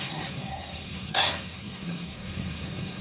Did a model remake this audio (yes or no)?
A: yes